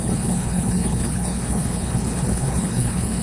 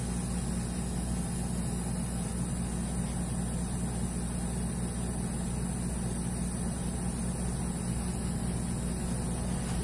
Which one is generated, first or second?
first